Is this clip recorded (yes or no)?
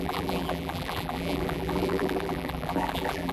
no